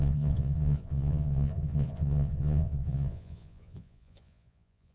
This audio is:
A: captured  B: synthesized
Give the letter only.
B